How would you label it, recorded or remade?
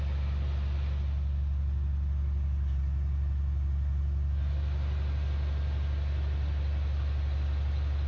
recorded